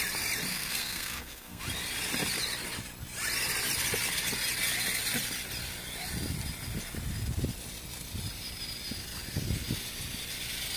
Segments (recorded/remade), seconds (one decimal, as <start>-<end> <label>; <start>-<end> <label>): 0.0-0.5 recorded; 0.5-1.6 remade; 1.6-10.8 recorded